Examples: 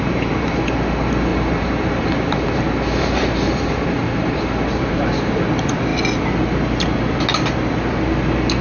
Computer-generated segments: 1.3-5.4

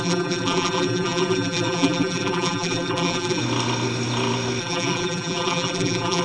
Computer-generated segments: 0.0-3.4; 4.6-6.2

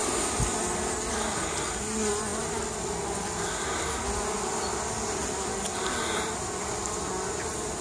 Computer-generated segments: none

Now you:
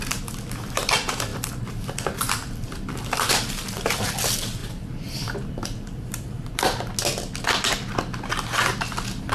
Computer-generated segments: 1.3-3.3; 4.6-6.6